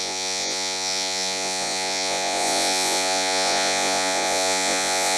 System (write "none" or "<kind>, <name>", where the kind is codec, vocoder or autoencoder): vocoder, Vocos